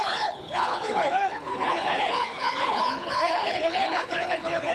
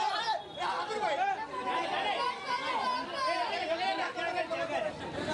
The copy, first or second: first